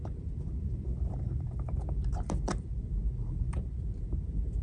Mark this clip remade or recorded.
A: remade